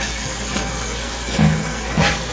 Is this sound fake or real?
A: fake